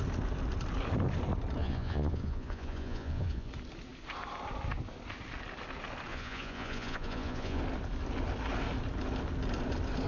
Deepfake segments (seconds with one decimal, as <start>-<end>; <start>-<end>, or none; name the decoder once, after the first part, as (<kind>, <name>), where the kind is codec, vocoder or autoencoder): 1.6-3.5 (vocoder, Vocos); 6.1-7.6